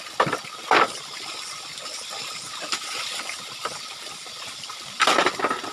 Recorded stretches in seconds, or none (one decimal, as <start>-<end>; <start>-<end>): 0.0-5.7